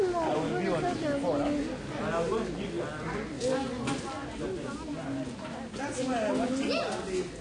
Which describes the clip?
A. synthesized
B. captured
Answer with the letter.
B